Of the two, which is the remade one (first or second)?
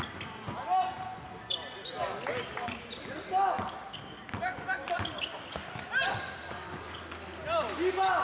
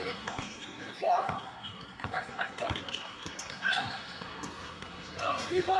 second